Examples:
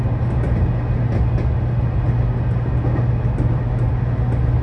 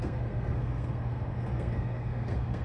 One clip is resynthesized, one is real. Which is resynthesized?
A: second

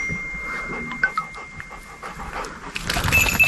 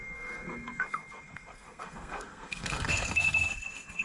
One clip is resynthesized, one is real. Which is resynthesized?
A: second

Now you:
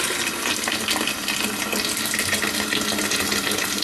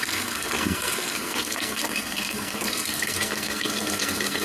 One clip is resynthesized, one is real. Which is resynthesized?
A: second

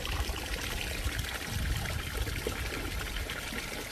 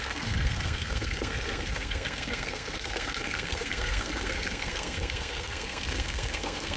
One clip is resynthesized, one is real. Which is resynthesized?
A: second